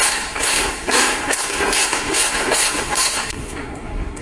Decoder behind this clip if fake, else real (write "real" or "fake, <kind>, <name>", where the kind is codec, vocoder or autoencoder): fake, codec, SNAC